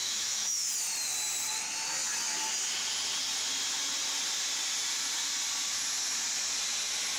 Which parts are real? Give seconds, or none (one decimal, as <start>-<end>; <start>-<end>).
0.7-7.2